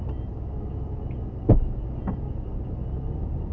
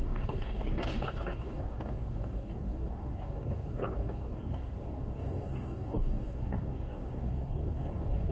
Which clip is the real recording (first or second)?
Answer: first